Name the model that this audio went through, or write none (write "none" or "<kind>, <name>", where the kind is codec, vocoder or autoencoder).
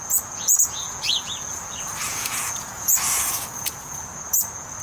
vocoder, Vocos